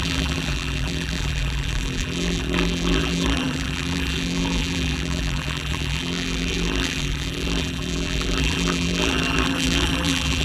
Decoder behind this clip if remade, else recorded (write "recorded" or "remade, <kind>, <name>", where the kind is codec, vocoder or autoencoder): remade, vocoder, BigVGAN v2